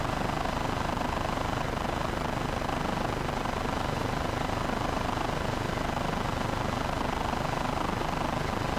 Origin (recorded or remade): recorded